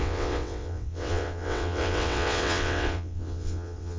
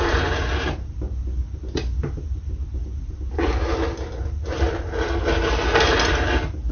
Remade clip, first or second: first